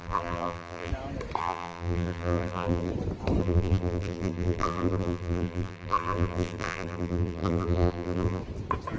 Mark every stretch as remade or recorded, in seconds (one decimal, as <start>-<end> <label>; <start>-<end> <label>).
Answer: 0.0-0.9 remade; 0.9-1.4 recorded; 1.4-2.9 remade; 2.9-3.4 recorded; 3.4-8.4 remade; 8.4-9.0 recorded